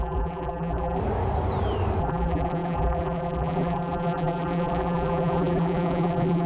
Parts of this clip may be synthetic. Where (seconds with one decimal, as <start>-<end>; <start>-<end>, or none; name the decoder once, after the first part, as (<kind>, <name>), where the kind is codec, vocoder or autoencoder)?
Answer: 0.0-1.0 (vocoder, BigVGAN v2); 2.0-6.5